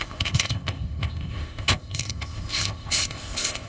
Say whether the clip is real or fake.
fake